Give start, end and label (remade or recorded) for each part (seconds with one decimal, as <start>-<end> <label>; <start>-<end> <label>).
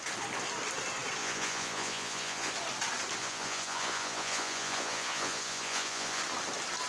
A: 0.0-1.2 recorded; 1.2-2.5 remade; 2.5-3.2 recorded; 3.2-6.2 remade; 6.2-6.9 recorded